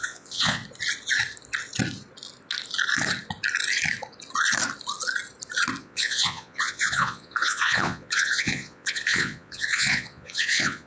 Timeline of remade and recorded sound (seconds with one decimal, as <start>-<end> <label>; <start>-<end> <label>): 0.0-0.6 remade; 0.6-5.8 recorded; 5.8-10.9 remade